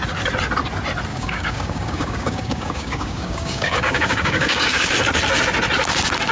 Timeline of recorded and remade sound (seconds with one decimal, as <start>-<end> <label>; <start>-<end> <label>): 0.0-1.1 recorded; 1.1-4.9 remade; 4.9-6.3 recorded